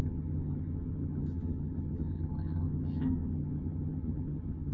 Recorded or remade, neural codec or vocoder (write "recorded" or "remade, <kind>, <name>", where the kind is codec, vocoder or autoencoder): remade, vocoder, HiFi-GAN